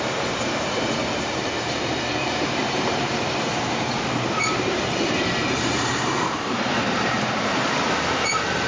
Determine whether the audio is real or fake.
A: fake